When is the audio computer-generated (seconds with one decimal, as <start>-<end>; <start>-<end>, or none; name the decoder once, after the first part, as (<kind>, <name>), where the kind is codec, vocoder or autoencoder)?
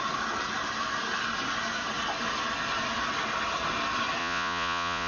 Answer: 4.2-5.1 (vocoder, Vocos)